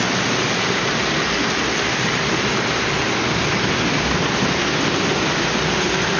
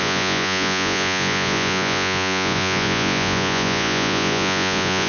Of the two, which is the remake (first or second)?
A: second